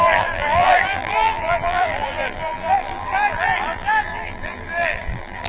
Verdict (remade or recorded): remade